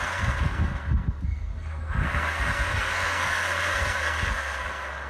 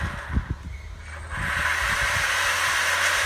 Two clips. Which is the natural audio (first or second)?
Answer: second